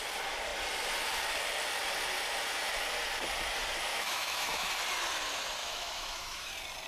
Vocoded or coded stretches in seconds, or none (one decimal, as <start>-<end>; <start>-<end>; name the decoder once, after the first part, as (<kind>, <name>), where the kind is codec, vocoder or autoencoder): 3.9-4.7 (autoencoder, DAC-VAE); 5.6-6.5